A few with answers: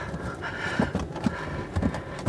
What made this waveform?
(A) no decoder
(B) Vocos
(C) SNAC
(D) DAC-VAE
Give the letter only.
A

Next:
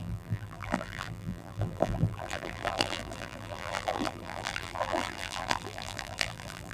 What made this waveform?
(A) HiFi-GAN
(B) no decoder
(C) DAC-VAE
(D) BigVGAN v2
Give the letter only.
D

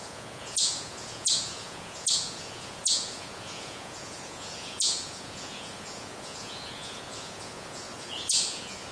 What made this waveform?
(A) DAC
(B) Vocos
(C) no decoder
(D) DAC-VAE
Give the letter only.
B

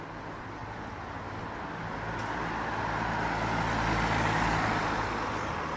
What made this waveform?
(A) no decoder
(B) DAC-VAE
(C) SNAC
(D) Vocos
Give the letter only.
A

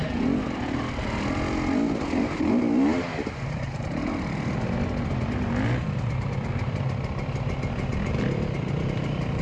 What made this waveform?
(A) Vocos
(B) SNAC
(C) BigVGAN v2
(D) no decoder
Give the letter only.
D